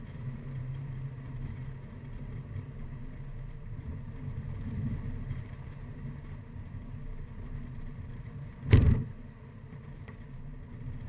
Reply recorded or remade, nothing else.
remade